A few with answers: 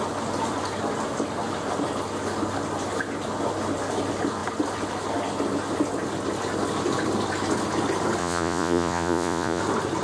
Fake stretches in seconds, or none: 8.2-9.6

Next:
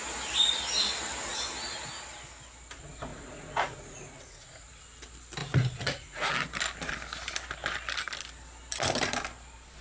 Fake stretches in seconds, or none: 3.1-4.8; 5.4-6.3